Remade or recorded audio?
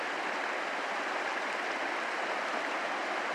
recorded